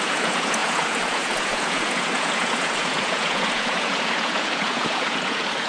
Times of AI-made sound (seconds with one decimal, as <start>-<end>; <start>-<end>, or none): 0.0-5.7